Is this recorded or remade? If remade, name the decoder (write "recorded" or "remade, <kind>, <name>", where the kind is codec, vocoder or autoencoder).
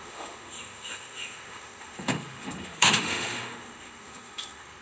remade, autoencoder, DAC-VAE